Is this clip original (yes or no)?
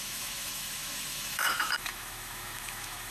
no